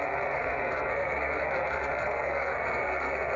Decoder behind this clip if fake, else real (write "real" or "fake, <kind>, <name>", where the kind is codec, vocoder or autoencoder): fake, codec, SNAC